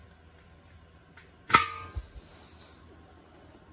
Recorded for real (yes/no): yes